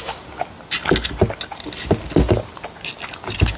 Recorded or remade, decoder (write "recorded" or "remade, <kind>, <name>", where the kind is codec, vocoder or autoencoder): recorded